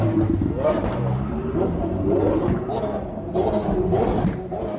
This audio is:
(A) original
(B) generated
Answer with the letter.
B